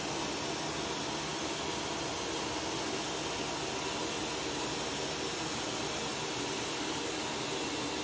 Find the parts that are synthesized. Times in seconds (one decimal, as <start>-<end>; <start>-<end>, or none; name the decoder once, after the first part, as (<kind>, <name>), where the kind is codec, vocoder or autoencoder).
none